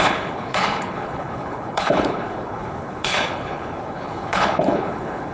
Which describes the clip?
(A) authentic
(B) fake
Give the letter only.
B